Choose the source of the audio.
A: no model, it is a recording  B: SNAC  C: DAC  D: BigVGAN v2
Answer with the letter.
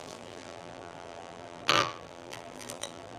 D